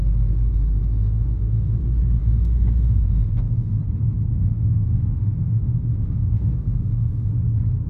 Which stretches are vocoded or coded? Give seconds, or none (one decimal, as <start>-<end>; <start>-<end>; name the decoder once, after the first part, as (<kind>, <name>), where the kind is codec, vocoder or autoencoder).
0.8-1.8 (autoencoder, DAC-VAE); 2.2-3.8; 4.3-7.3